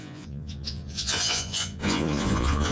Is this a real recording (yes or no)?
no